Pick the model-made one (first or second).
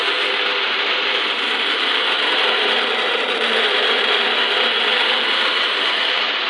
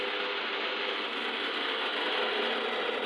first